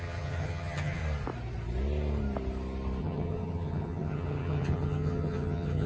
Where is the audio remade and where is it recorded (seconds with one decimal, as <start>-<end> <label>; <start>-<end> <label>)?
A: 0.0-1.0 remade; 1.0-3.0 recorded; 3.0-5.9 remade